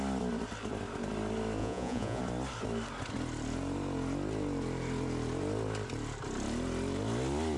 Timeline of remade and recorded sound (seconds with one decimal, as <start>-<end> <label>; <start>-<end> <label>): 0.0-1.6 recorded; 1.6-2.2 remade; 2.2-7.6 recorded